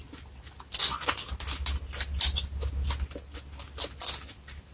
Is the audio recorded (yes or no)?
yes